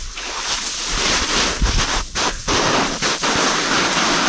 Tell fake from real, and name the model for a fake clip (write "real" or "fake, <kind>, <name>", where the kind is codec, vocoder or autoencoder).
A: real